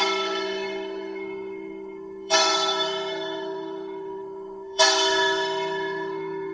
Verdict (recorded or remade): remade